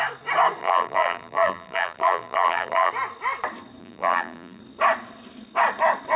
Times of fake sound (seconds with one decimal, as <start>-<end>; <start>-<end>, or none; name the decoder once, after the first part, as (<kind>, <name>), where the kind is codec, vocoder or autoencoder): 0.6-2.9 (vocoder, BigVGAN v2); 3.8-4.6